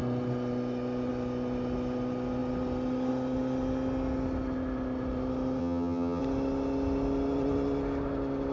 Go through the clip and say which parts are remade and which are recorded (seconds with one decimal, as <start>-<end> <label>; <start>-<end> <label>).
0.0-5.6 recorded; 5.6-6.2 remade; 6.2-8.5 recorded